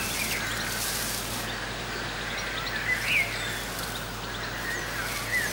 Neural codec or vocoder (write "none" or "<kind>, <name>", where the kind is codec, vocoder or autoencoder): none